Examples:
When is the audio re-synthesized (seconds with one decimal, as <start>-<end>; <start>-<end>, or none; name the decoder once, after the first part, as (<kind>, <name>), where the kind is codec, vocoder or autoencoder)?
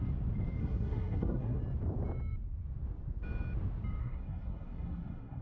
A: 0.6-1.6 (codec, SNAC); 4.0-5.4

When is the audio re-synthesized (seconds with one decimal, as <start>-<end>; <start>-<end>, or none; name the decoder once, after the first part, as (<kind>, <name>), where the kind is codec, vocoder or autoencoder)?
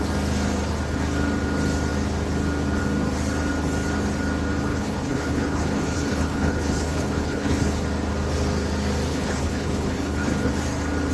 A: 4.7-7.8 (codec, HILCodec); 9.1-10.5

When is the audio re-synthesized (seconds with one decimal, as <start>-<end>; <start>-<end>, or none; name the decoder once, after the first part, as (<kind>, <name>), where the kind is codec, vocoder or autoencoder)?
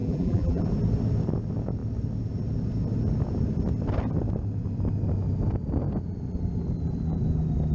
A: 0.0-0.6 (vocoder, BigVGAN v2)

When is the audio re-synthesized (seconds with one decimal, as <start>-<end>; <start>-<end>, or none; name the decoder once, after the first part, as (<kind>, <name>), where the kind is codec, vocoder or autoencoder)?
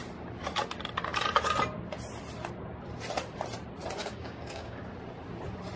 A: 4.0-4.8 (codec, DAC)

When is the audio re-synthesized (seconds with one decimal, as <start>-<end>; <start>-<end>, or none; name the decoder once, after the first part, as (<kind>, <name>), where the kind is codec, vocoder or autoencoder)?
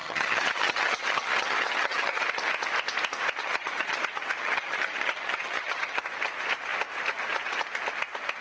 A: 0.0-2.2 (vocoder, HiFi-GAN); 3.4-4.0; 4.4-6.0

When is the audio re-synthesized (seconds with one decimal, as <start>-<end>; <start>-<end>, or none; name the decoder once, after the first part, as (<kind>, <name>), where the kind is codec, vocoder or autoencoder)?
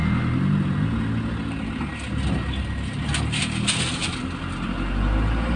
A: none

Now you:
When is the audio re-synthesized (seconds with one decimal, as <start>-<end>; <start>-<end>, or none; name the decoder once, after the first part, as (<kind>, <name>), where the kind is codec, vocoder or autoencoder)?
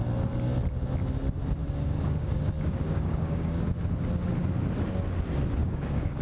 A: 1.6-3.7 (codec, DAC); 5.6-6.2